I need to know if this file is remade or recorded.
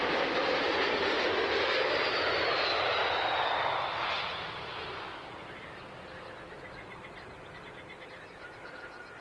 recorded